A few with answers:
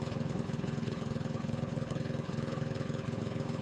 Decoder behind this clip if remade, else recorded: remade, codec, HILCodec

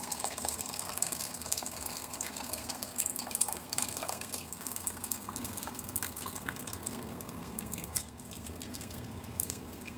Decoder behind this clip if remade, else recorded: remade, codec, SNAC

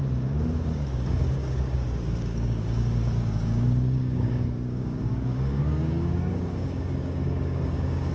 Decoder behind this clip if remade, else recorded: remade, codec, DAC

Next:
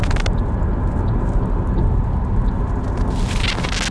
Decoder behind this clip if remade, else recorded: recorded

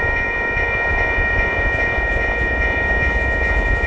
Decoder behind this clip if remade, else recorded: remade, vocoder, Vocos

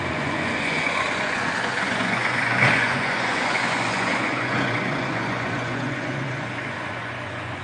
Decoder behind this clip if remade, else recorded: remade, vocoder, Vocos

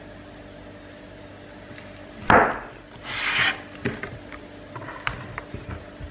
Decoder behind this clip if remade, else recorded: recorded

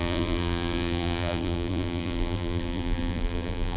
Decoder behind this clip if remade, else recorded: remade, vocoder, BigVGAN v2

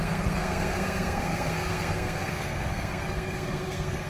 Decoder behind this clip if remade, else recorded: remade, codec, SNAC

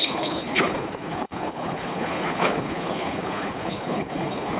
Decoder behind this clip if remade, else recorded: remade, codec, HILCodec